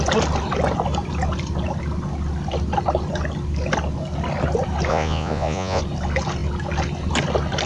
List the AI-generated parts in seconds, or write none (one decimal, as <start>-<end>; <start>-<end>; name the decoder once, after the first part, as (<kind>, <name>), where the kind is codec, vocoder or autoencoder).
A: 4.9-5.8 (vocoder, Vocos)